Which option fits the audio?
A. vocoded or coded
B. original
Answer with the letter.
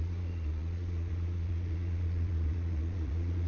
A